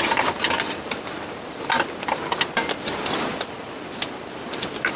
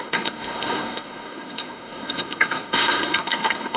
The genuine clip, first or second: first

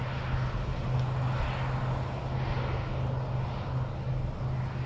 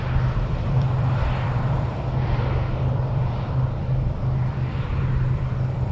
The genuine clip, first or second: first